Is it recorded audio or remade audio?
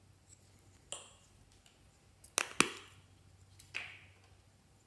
recorded